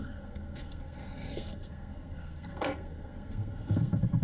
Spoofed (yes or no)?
yes